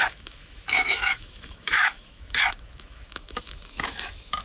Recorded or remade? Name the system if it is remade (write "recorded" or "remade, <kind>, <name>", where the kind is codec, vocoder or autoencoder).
remade, autoencoder, DAC-VAE